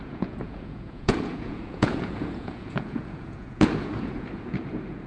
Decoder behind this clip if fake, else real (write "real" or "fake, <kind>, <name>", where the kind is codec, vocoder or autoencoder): fake, vocoder, Vocos